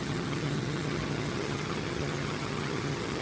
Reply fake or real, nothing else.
fake